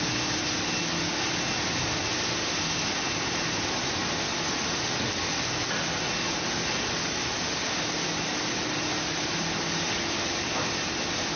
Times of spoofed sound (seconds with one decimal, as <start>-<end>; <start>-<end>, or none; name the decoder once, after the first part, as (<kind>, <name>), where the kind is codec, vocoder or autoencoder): none